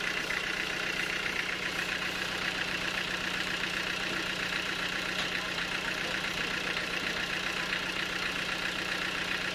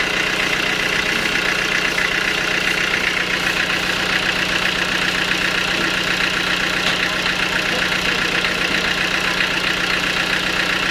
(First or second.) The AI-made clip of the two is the first